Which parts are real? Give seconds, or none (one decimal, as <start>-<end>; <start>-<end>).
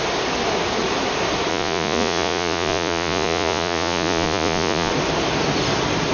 0.0-1.5; 4.9-6.1